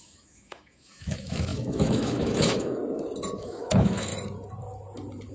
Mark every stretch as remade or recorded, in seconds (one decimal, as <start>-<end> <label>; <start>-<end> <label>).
0.0-2.8 remade; 2.8-3.4 recorded; 3.4-4.1 remade; 4.1-5.3 recorded